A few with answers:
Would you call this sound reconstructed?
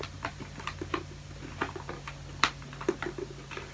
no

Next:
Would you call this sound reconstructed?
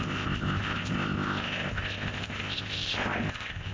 yes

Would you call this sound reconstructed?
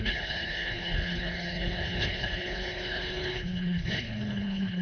yes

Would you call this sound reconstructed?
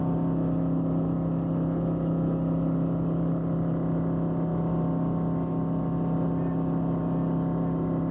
no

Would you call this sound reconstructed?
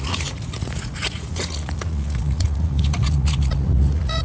yes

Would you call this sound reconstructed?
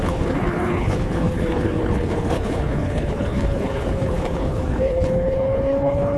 yes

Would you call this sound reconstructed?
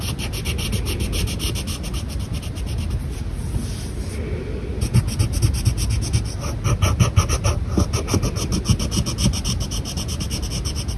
no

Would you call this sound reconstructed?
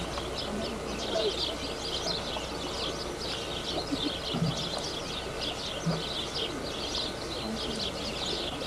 no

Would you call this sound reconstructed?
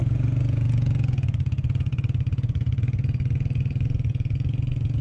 yes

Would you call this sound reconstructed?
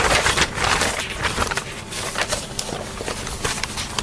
yes